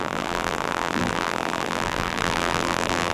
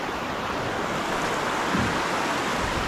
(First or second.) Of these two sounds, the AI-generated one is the first